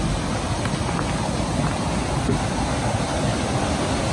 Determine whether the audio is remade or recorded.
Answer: recorded